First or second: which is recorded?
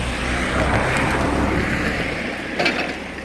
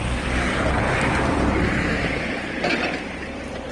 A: first